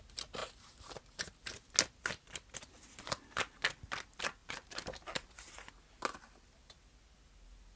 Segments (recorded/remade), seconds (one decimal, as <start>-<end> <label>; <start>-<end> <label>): 0.0-7.8 recorded